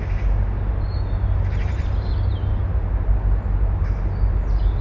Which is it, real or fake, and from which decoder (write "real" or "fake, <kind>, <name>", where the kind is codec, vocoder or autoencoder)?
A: real